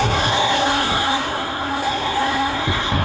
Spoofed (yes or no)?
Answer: yes